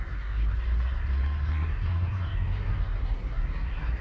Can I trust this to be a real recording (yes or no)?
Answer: no